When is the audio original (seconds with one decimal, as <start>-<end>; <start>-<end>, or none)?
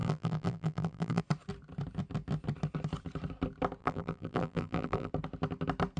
1.2-3.8; 5.1-6.0